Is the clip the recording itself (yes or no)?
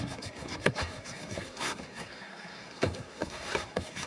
no